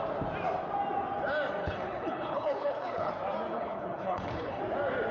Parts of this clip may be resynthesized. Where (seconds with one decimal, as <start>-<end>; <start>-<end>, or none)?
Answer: 1.6-3.1; 3.5-4.6

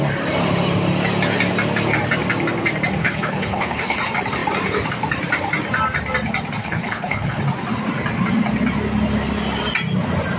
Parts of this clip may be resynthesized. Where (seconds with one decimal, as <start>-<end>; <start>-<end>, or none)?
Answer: 3.0-4.0; 6.6-7.4

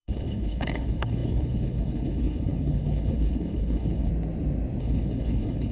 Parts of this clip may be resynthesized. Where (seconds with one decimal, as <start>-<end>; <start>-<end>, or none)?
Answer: 0.0-4.1; 4.8-5.7

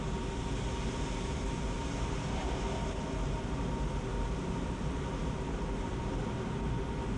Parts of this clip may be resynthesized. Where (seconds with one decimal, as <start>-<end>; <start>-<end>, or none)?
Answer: none